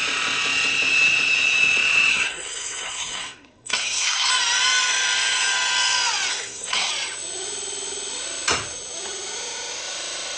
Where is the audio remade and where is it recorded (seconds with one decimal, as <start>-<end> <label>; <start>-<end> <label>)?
0.0-2.1 recorded; 2.1-4.3 remade; 4.3-6.3 recorded; 6.3-6.9 remade; 6.9-10.4 recorded